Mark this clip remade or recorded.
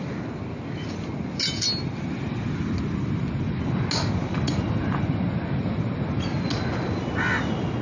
recorded